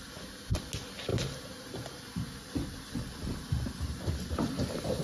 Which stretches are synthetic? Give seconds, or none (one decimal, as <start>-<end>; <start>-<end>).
none